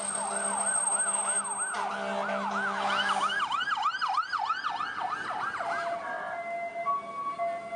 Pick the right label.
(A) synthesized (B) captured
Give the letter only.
B